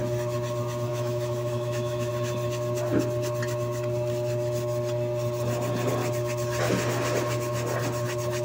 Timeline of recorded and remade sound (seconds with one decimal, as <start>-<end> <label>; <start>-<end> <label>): 0.0-0.9 recorded; 0.9-2.1 remade; 2.1-8.4 recorded